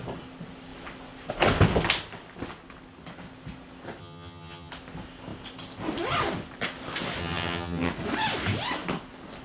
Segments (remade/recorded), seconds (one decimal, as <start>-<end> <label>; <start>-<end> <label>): 0.0-4.0 recorded; 4.0-4.7 remade; 4.7-7.2 recorded; 7.2-7.9 remade; 7.9-9.4 recorded